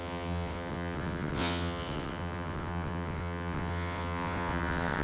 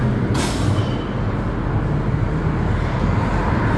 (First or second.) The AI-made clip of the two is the first